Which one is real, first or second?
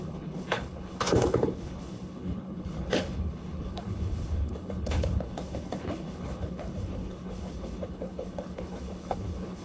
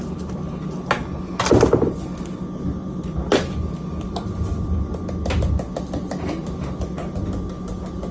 second